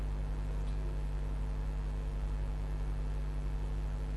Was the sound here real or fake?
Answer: real